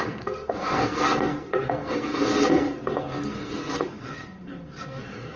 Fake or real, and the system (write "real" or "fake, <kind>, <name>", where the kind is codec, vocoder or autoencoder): fake, codec, SNAC